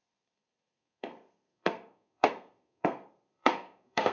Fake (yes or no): yes